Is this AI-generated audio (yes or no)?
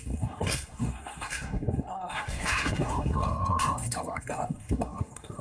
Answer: yes